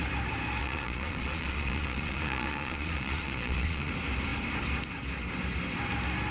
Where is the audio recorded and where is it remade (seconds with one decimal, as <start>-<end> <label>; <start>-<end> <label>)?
0.0-0.6 recorded; 0.6-3.9 remade; 3.9-6.3 recorded

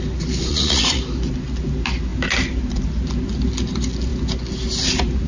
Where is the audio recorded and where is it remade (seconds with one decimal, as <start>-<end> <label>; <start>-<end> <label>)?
0.0-0.5 recorded; 0.5-1.0 remade; 1.0-5.3 recorded

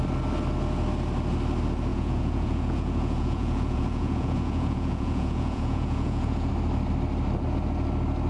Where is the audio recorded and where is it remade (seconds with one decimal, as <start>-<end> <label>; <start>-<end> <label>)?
0.0-1.9 recorded; 1.9-6.5 remade; 6.5-8.3 recorded

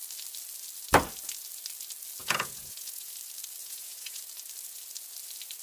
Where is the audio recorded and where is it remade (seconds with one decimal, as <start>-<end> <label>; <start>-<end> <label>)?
0.0-2.2 recorded; 2.2-3.1 remade; 3.1-3.6 recorded; 3.6-4.2 remade; 4.2-5.6 recorded